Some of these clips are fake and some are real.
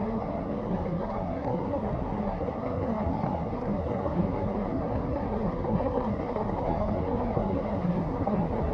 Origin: fake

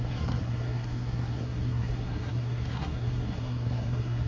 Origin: fake